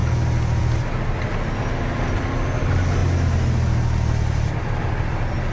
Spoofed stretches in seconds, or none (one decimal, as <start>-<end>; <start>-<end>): none